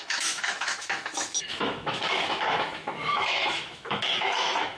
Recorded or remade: remade